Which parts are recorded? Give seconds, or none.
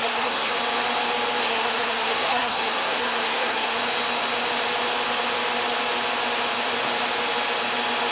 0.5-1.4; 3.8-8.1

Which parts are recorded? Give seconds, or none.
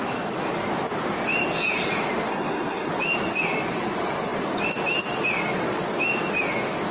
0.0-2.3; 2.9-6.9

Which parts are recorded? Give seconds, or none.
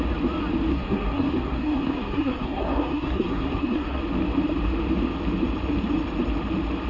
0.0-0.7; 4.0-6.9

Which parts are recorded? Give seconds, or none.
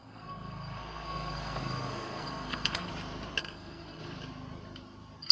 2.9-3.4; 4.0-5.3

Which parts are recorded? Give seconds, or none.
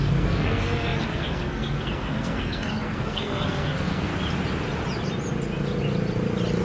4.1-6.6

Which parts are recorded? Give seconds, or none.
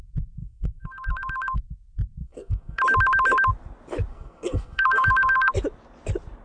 0.0-0.4; 1.6-2.2; 2.8-4.1; 5.5-6.4